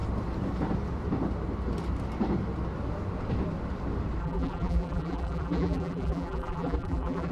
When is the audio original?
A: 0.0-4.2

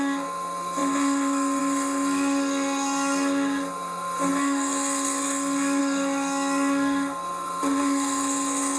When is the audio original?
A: none

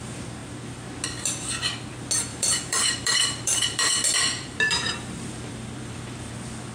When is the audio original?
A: 0.0-2.3; 6.3-6.7

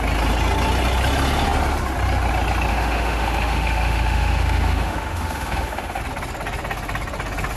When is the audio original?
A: 0.0-2.7; 6.0-7.6